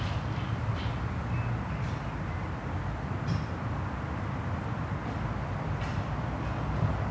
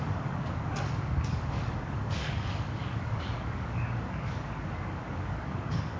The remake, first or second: second